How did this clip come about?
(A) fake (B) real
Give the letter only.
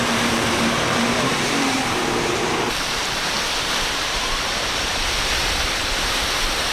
A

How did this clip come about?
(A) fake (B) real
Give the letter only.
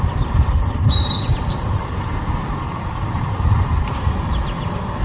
B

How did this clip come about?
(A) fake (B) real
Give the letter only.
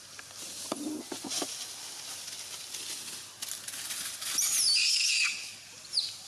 B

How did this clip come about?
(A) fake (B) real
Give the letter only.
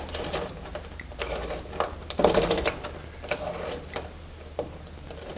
B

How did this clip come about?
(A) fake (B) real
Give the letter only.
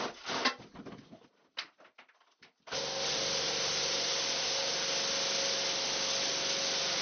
B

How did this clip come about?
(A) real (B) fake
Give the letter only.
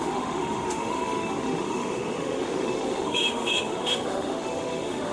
B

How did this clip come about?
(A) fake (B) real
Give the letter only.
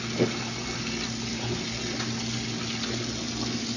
B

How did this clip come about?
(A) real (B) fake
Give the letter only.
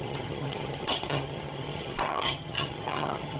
B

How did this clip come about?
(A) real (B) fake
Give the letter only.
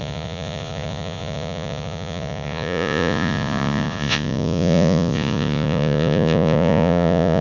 B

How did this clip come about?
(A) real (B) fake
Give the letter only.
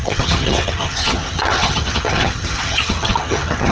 B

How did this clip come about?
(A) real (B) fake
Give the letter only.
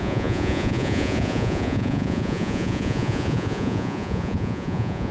B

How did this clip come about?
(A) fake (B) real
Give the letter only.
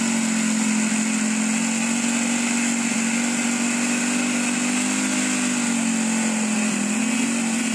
B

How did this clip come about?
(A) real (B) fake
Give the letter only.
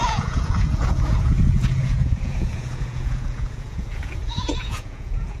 B